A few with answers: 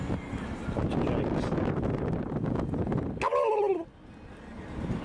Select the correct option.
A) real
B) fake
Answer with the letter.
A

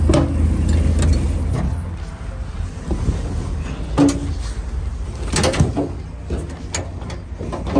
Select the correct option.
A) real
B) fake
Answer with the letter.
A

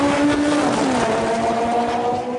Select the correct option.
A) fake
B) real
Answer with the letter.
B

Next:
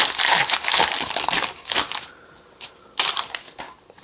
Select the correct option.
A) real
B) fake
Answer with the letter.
A